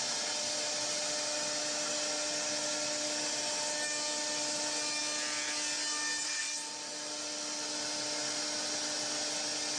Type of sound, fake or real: real